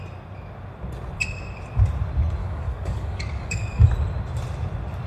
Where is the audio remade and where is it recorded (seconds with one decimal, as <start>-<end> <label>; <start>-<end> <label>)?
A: 0.0-2.4 recorded; 2.4-3.9 remade; 3.9-5.1 recorded